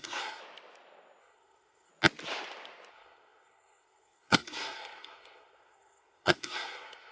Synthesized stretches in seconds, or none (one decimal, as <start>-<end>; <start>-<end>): 0.0-0.4; 1.2-1.9; 2.9-7.1